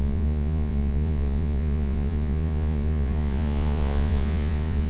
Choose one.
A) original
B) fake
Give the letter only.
B